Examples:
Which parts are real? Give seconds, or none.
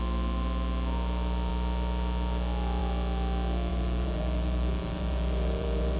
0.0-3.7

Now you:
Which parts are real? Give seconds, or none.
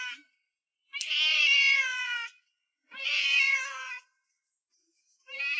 0.0-1.3; 4.4-5.6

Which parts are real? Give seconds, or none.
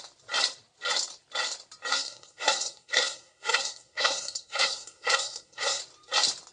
0.0-1.9; 5.8-6.5